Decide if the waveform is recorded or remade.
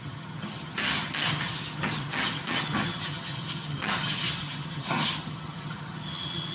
remade